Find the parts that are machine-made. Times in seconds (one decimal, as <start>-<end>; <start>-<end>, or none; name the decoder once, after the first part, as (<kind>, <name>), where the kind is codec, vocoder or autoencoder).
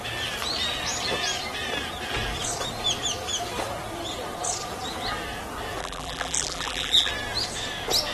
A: 5.8-7.1 (vocoder, BigVGAN v2)